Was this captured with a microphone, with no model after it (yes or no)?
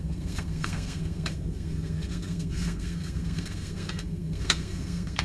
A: no